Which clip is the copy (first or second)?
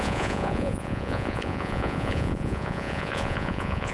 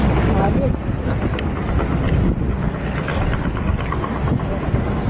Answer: first